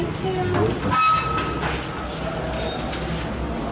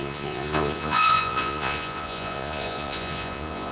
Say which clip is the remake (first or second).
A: second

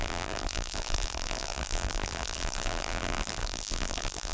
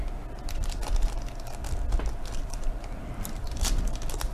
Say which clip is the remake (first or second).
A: first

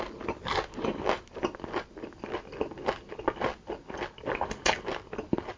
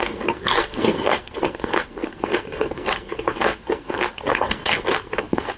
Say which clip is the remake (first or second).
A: second